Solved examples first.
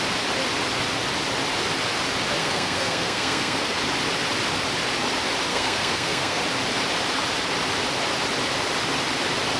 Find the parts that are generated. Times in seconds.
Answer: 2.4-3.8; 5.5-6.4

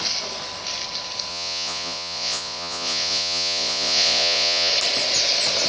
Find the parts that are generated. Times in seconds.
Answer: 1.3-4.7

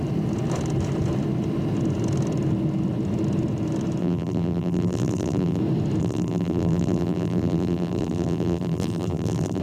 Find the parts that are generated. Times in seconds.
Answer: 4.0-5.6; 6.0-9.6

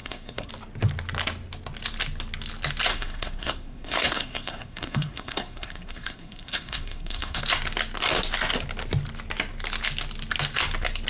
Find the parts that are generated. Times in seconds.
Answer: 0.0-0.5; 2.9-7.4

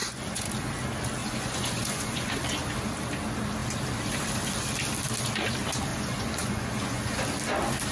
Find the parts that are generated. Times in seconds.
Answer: 0.0-0.5; 1.2-2.3; 5.9-7.2

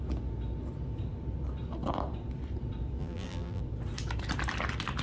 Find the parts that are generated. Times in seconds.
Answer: 3.0-3.6

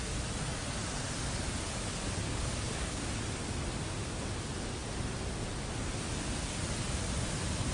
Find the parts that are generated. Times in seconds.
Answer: 2.2-3.1